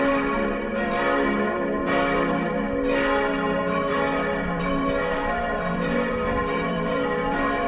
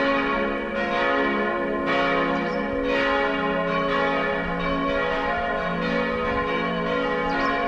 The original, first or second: second